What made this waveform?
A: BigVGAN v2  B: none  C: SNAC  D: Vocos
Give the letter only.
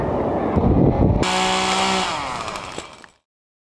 B